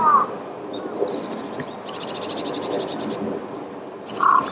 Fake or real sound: real